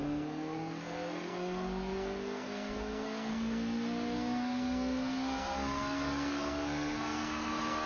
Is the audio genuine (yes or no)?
no